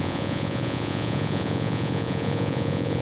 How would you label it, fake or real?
fake